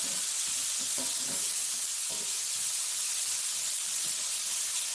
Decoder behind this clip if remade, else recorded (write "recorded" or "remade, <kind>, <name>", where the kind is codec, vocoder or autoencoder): remade, vocoder, WaveNeXt